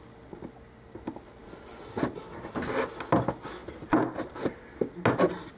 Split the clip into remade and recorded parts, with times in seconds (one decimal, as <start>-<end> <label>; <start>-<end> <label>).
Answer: 0.0-5.6 recorded

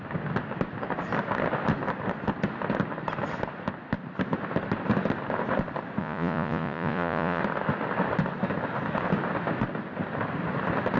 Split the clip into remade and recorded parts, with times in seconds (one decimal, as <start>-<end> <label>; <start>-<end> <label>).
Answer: 0.0-6.0 recorded; 6.0-7.4 remade; 7.4-11.0 recorded

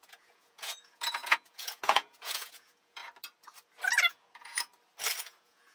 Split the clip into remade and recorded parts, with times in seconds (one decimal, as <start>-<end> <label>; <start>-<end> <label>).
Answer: 0.0-3.0 remade; 3.0-4.1 recorded; 4.1-4.7 remade; 4.7-5.2 recorded; 5.2-5.7 remade

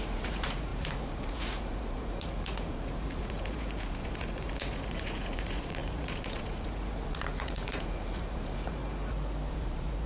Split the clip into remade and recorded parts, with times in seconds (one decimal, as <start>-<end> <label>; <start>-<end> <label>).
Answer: 0.0-8.8 remade; 8.8-9.5 recorded; 9.5-10.1 remade

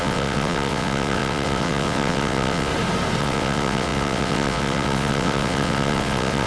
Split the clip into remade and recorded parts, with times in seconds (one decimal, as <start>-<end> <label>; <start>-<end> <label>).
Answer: 0.0-2.7 remade; 2.7-3.2 recorded; 3.2-6.5 remade

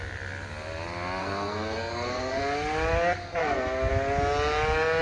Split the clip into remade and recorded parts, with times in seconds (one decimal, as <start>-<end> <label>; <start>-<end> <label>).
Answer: 0.0-1.2 recorded; 1.2-2.4 remade; 2.4-3.4 recorded; 3.4-3.9 remade; 3.9-5.0 recorded

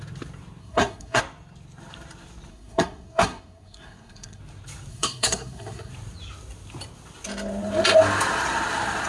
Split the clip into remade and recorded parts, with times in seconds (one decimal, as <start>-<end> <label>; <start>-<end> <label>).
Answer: 0.0-0.6 recorded; 0.6-1.2 remade; 1.2-2.5 recorded; 2.5-4.4 remade; 4.4-4.9 recorded; 4.9-5.9 remade; 5.9-9.1 recorded

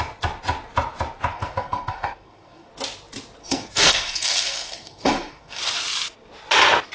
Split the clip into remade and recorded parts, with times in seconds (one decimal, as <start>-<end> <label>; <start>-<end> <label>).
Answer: 0.0-1.3 recorded; 1.3-2.7 remade; 2.7-3.4 recorded; 3.4-5.6 remade; 5.6-6.9 recorded